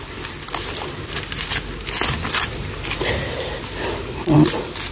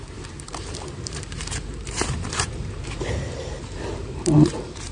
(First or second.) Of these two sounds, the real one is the first